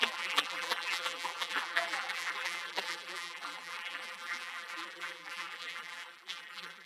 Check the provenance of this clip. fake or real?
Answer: fake